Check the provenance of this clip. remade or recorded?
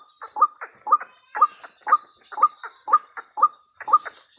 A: recorded